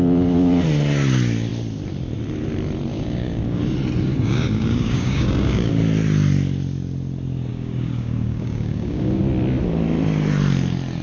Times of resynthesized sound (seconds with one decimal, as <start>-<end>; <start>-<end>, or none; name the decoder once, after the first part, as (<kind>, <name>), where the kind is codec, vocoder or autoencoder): 2.9-3.6 (codec, DAC); 4.1-5.7; 7.5-9.2